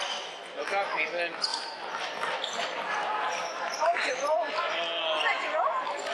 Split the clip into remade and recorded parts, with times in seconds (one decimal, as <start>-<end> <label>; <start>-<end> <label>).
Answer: 0.0-1.5 recorded; 1.5-4.5 remade; 4.5-6.1 recorded